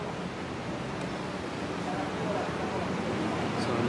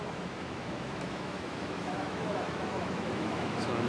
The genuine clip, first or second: first